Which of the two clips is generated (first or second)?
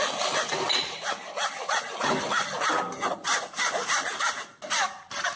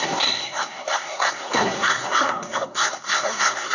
second